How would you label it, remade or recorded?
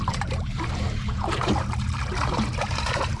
remade